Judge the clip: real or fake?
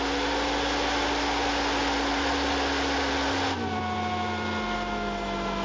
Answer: real